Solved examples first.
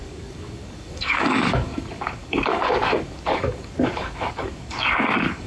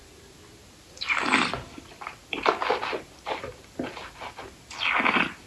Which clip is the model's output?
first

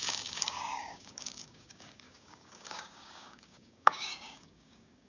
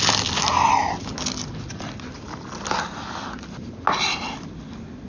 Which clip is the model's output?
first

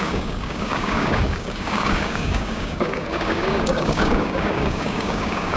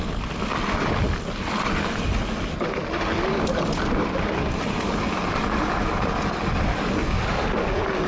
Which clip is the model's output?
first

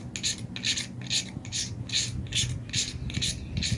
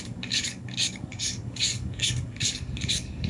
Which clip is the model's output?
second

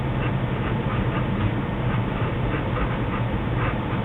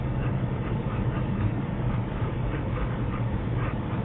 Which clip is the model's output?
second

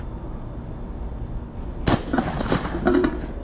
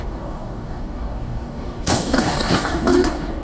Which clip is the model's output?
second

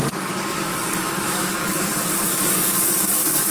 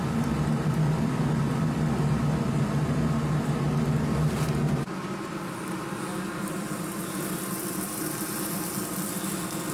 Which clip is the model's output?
first